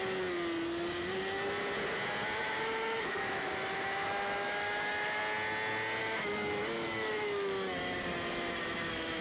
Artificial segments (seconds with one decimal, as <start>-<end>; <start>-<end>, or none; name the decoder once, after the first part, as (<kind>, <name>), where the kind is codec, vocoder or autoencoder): 2.4-5.2 (autoencoder, DAC-VAE); 6.0-9.2